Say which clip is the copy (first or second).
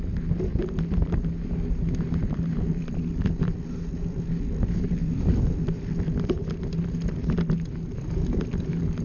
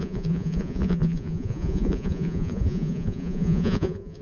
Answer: second